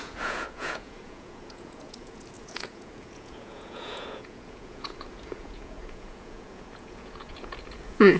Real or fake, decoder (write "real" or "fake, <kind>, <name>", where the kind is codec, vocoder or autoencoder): fake, vocoder, Vocos